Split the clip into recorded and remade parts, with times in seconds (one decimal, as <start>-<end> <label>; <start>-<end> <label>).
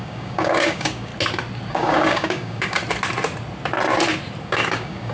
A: 0.0-1.1 remade; 1.1-1.7 recorded; 1.7-2.8 remade; 2.8-4.4 recorded; 4.4-5.1 remade